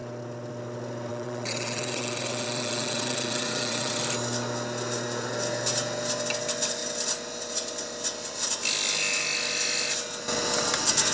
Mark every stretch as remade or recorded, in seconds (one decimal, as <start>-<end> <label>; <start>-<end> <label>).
0.0-1.1 recorded; 1.1-4.0 remade; 4.0-11.1 recorded